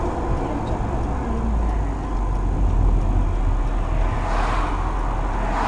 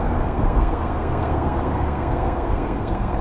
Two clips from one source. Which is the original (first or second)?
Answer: first